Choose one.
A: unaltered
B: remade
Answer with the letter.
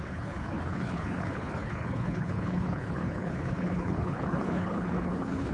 B